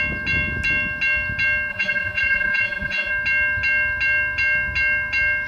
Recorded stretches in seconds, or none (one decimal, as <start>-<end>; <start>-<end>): 0.0-1.7; 3.1-5.5